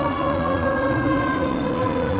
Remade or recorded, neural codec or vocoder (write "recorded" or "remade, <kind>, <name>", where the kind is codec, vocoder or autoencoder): remade, vocoder, Vocos